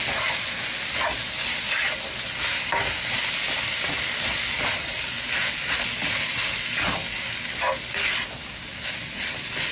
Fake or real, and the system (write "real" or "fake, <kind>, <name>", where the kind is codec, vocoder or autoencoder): real